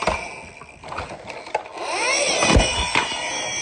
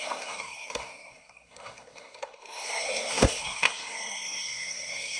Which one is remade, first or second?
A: second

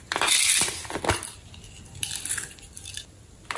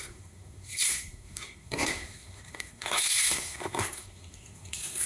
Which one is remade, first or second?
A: second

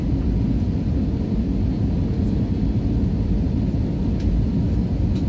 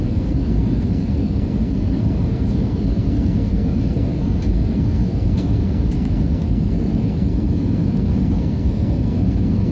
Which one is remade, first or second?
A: second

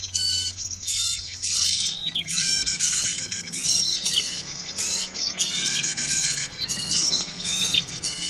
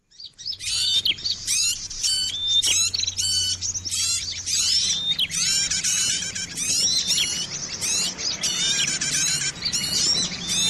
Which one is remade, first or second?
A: first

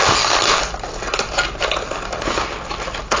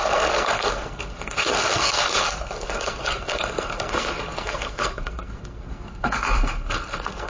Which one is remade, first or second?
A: second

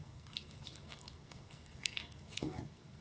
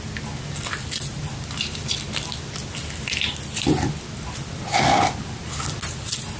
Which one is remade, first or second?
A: first